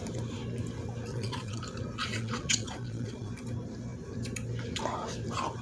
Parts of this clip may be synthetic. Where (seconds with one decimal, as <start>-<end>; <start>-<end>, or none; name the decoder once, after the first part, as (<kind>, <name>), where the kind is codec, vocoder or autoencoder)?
1.1-1.6 (vocoder, Vocos); 2.0-3.3